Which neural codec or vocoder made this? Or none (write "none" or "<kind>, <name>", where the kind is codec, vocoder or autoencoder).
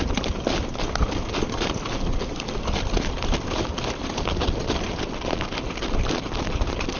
none